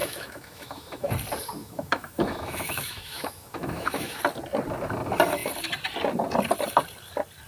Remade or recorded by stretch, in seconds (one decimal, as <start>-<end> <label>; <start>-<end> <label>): 0.0-1.1 remade; 1.1-1.6 recorded; 1.6-4.2 remade; 4.2-7.5 recorded